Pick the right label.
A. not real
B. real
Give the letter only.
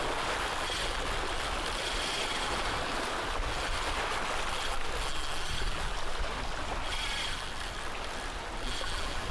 B